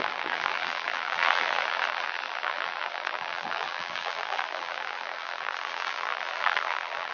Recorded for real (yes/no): no